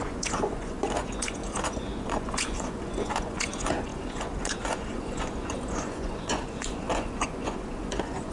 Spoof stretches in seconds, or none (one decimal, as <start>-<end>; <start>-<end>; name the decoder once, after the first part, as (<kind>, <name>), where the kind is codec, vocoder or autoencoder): 0.0-8.3 (vocoder, Vocos)